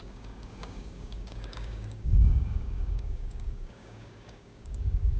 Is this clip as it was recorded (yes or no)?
no